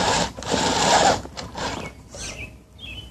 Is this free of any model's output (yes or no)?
no